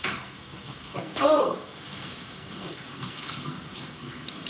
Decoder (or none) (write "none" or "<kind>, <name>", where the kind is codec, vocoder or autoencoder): codec, SNAC